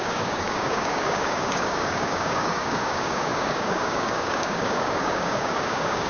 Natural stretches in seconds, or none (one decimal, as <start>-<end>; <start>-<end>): none